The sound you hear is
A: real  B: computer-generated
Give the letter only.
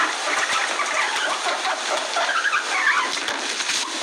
A